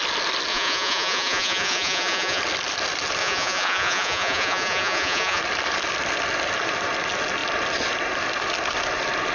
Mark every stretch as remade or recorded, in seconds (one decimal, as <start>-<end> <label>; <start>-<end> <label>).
0.0-0.5 recorded; 0.5-2.4 remade; 2.4-3.2 recorded; 3.2-5.4 remade; 5.4-9.3 recorded

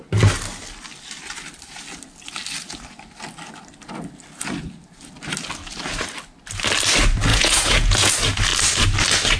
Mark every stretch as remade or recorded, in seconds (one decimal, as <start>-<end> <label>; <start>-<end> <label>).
0.0-7.3 recorded; 7.3-8.1 remade; 8.1-9.4 recorded

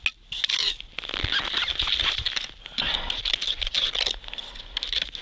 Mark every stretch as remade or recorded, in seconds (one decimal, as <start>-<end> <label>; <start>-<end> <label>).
0.0-5.2 recorded

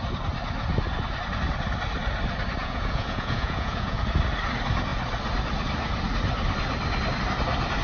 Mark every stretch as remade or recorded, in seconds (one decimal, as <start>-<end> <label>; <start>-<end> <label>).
0.0-2.6 recorded; 2.6-4.0 remade; 4.0-7.8 recorded

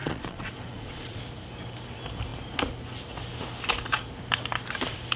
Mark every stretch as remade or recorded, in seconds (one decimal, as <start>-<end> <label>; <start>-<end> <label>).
0.0-1.2 remade; 1.2-5.2 recorded